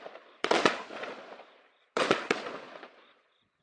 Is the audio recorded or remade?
remade